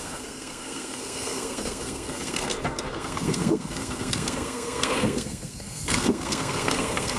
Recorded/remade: remade